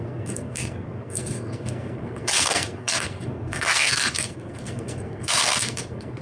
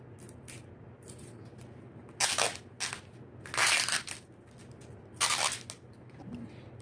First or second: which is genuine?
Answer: second